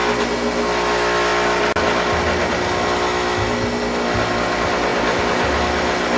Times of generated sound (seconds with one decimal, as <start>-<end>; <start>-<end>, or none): none